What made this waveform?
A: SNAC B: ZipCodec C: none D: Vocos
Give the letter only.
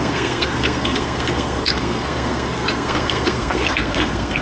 A